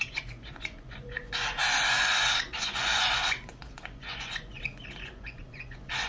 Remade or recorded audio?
remade